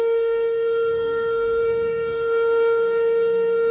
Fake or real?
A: fake